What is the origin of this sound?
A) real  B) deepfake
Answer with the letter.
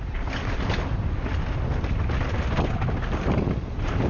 A